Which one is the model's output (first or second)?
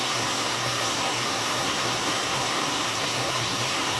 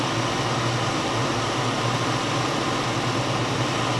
first